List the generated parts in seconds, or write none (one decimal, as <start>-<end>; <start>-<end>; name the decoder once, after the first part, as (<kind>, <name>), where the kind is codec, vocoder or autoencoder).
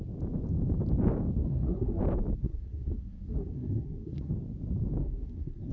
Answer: 1.4-2.0 (codec, SNAC); 2.4-4.3; 5.0-5.7